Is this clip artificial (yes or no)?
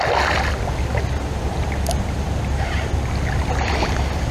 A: no